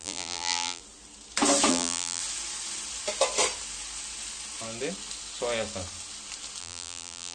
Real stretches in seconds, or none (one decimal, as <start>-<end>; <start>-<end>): 0.8-1.7; 2.2-6.6